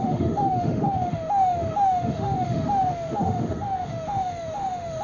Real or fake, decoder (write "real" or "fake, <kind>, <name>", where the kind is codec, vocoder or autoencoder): fake, autoencoder, DAC-VAE